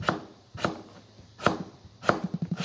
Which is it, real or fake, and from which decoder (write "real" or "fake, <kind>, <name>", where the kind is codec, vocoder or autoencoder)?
fake, vocoder, BigVGAN v2